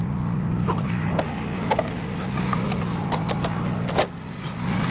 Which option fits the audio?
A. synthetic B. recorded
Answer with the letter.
B